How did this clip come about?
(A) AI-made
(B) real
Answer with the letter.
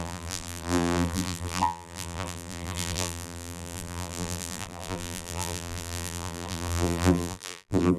A